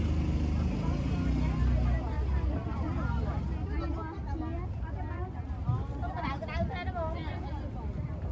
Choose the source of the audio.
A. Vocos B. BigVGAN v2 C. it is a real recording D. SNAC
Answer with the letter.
C